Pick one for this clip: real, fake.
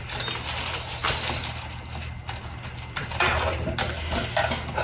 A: real